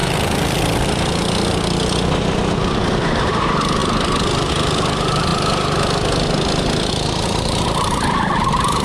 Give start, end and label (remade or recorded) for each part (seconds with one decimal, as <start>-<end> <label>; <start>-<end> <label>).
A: 0.0-3.2 recorded; 3.2-5.3 remade; 5.3-6.9 recorded; 6.9-8.8 remade